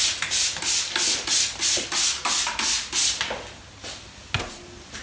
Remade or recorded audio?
recorded